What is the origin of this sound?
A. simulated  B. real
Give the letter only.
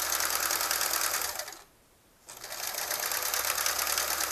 B